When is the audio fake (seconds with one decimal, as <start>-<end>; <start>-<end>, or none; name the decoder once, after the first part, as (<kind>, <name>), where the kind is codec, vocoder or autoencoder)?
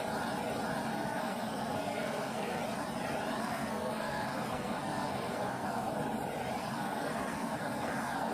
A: 0.9-2.6 (codec, SNAC); 3.4-6.0; 6.6-8.3